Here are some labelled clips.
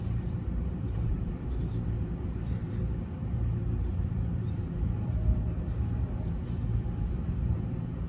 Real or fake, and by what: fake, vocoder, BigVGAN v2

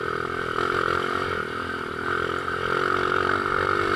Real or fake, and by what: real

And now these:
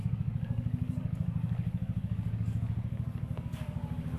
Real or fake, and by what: fake, codec, DAC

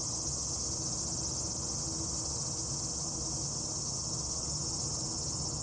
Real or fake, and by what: real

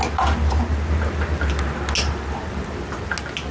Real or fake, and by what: real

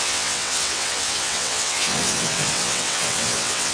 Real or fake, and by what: fake, vocoder, WaveNeXt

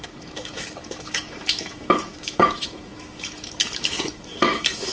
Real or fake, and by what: fake, autoencoder, DAC-VAE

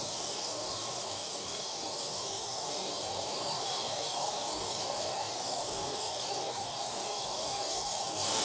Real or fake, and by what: fake, codec, DAC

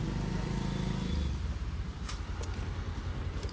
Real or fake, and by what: real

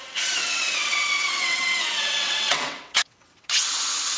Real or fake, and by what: fake, vocoder, WaveNeXt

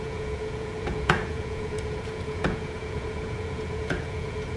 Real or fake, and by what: fake, vocoder, Vocos